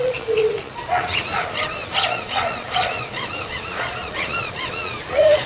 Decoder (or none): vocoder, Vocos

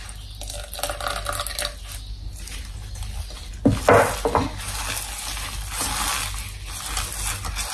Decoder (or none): none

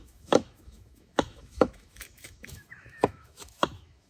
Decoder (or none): autoencoder, DAC-VAE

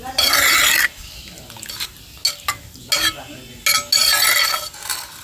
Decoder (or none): none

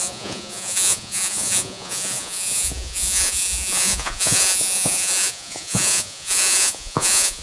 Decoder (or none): vocoder, Vocos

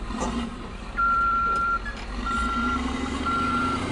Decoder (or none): vocoder, BigVGAN v2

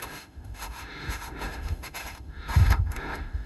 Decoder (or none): autoencoder, DAC-VAE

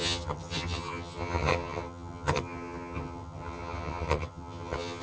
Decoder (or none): vocoder, HiFi-GAN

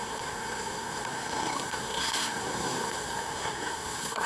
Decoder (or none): codec, SNAC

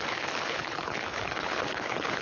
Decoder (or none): codec, HILCodec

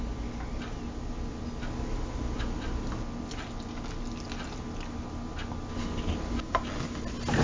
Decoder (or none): none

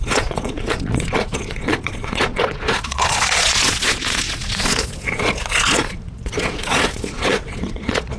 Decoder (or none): vocoder, Vocos